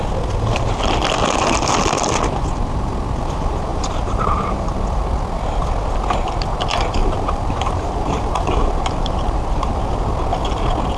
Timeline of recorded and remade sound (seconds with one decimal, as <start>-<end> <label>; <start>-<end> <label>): 0.0-3.7 recorded; 3.7-4.7 remade; 4.7-7.0 recorded; 7.0-10.0 remade; 10.0-11.0 recorded